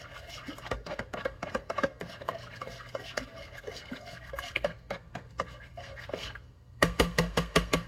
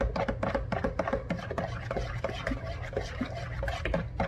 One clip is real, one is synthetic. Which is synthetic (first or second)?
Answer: first